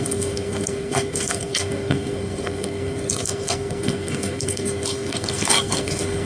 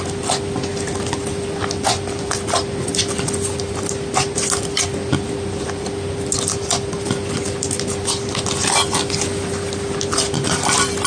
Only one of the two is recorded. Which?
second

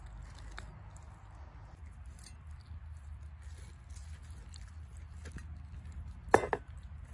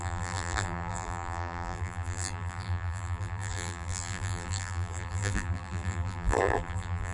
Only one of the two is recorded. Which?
first